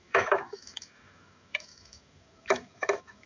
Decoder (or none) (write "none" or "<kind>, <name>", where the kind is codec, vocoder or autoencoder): autoencoder, DAC-VAE